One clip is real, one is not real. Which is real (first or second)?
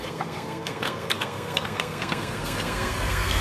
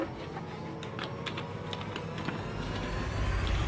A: second